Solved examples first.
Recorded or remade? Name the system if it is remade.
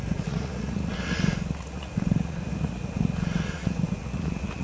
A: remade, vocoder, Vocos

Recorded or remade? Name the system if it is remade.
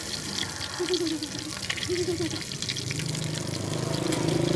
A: recorded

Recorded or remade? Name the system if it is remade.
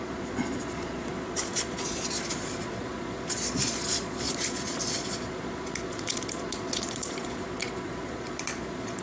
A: remade, vocoder, Vocos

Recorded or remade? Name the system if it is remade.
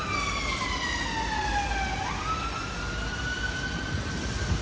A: recorded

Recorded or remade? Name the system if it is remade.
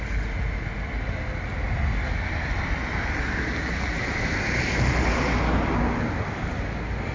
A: recorded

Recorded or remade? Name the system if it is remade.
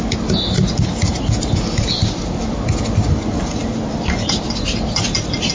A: recorded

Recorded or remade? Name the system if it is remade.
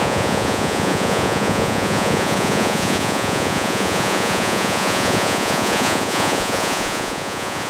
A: remade, vocoder, Vocos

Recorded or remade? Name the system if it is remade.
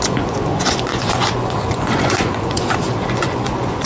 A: remade, vocoder, Vocos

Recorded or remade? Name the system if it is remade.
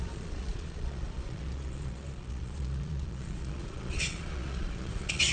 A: remade, vocoder, Vocos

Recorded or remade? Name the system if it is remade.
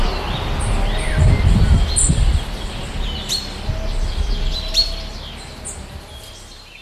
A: recorded